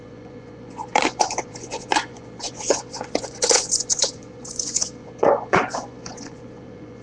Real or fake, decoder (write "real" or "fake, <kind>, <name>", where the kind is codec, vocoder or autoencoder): fake, vocoder, Vocos